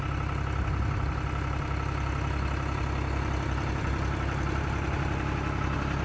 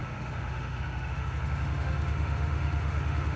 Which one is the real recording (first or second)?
first